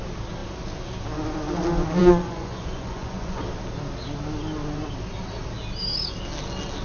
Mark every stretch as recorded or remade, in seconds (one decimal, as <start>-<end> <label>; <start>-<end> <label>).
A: 0.0-2.0 recorded; 2.0-3.4 remade; 3.4-6.8 recorded